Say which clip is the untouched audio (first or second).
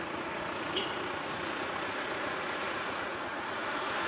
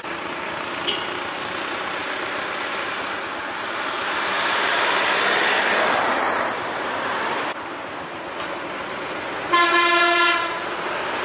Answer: second